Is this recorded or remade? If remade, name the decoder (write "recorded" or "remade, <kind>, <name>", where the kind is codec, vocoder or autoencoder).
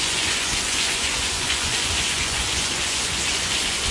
remade, vocoder, Vocos